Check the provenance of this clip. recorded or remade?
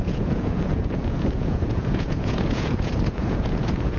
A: remade